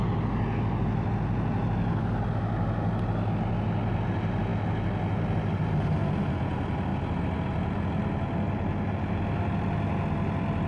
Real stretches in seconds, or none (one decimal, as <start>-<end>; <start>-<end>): 0.0-10.7